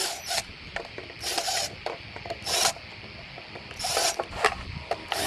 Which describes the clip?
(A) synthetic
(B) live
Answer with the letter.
B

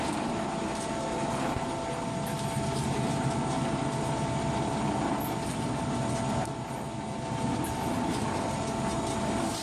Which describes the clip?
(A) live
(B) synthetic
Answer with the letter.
A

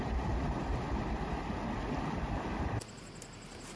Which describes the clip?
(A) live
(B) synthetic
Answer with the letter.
A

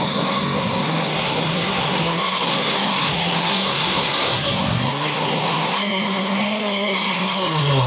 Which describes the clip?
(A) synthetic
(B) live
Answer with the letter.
A